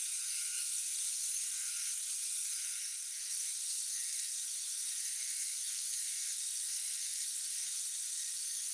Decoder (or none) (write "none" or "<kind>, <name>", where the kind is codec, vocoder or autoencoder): codec, SNAC